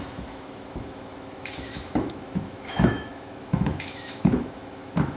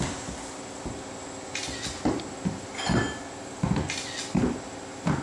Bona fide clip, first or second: second